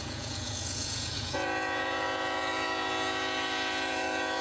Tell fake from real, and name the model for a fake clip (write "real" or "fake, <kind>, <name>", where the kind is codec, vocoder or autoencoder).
fake, vocoder, Vocos